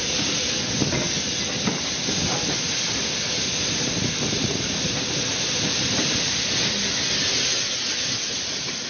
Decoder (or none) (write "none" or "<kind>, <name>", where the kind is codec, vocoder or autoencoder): none